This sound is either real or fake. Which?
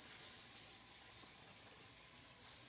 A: fake